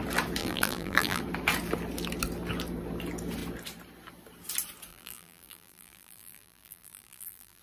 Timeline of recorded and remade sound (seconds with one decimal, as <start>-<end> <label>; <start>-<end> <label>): 0.0-0.4 recorded; 0.4-1.2 remade; 1.2-4.9 recorded; 4.9-7.6 remade